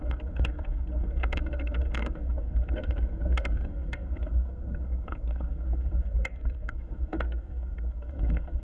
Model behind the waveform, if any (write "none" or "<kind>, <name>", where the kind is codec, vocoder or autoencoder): codec, SNAC